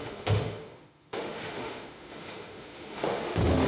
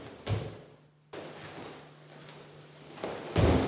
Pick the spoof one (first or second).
first